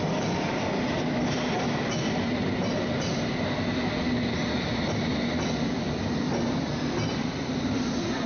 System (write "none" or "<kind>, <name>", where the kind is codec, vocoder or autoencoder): none